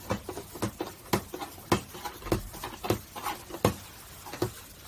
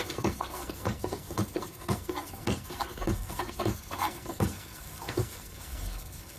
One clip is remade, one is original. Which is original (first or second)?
first